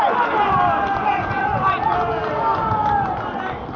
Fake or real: real